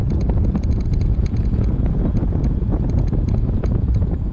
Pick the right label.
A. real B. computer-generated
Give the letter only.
B